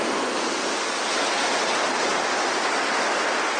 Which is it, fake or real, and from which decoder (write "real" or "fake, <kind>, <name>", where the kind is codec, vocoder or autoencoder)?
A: real